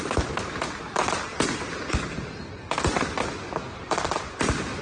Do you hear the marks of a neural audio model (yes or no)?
yes